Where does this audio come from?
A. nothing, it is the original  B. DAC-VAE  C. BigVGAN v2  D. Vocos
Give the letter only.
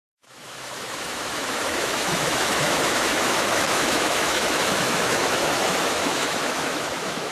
B